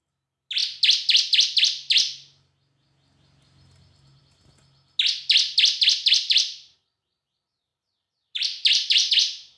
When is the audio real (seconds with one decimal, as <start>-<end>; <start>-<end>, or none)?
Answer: 0.0-7.7; 9.1-9.6